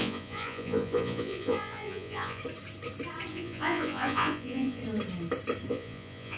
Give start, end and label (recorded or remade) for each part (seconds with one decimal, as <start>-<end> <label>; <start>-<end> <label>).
0.0-2.4 remade; 2.4-3.3 recorded; 3.3-4.8 remade; 4.8-5.7 recorded; 5.7-6.4 remade